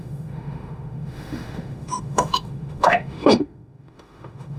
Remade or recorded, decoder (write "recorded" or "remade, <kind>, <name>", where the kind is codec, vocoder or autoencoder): remade, autoencoder, DAC-VAE